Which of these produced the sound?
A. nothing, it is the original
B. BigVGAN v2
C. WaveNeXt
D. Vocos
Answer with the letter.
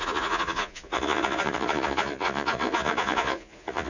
D